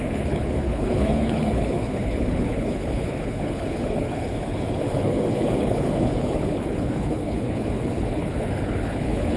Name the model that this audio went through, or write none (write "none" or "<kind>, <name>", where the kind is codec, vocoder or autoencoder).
codec, HILCodec